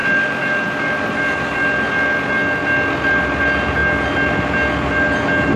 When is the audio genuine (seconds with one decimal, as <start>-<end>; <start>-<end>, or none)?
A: 0.0-5.6